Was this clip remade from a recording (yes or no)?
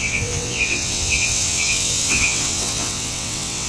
yes